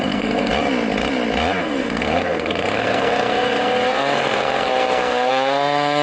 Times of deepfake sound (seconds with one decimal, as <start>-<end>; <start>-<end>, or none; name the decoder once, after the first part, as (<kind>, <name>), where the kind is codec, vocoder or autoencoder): 0.0-0.5 (codec, SNAC); 1.6-6.0